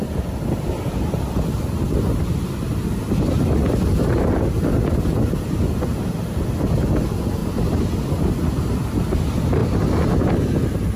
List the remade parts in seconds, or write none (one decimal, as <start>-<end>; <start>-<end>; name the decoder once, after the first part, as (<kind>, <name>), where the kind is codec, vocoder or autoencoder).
none